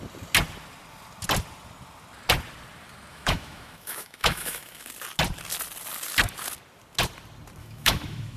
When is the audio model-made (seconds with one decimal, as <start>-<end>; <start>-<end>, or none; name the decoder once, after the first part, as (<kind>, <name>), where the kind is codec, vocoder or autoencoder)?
3.1-4.9 (autoencoder, DAC-VAE); 7.6-8.4